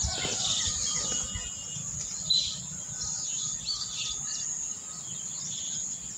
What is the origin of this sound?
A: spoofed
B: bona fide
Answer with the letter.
B